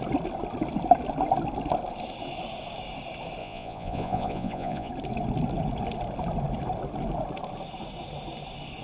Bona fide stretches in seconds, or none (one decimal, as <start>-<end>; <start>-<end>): 0.0-3.4; 4.9-8.8